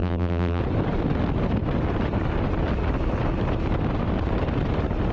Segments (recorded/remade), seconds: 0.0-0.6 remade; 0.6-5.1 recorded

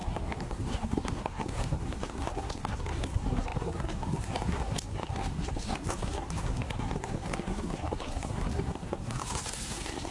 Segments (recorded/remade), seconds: 0.0-10.1 remade

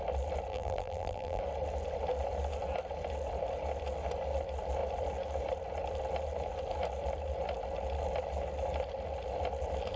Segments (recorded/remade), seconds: 0.0-0.5 recorded; 0.5-1.4 remade; 1.4-10.0 recorded

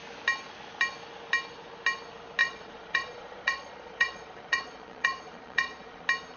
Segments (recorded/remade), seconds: 0.0-2.4 recorded; 2.4-6.0 remade; 6.0-6.4 recorded

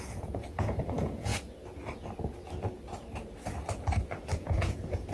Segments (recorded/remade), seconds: 0.0-1.3 remade; 1.3-4.4 recorded; 4.4-5.1 remade

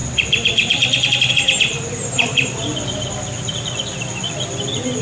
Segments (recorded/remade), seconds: 0.0-1.3 recorded; 1.3-2.7 remade; 2.7-5.0 recorded

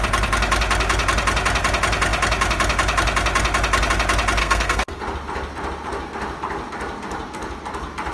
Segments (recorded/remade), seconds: 0.0-4.4 recorded; 4.4-5.0 remade; 5.0-8.1 recorded